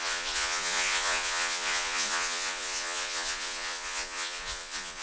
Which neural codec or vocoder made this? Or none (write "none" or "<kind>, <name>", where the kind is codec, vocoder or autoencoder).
vocoder, Vocos